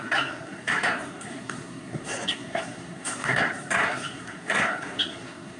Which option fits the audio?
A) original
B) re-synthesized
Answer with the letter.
B